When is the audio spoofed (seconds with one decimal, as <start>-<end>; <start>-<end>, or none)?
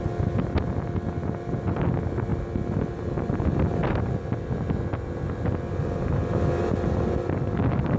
none